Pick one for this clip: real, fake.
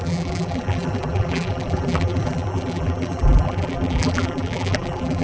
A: fake